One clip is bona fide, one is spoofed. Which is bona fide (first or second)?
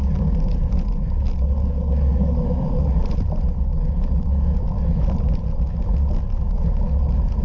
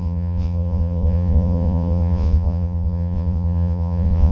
first